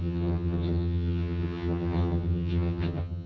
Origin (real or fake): fake